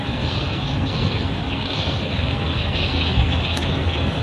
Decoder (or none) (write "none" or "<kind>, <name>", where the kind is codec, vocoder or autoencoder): codec, SNAC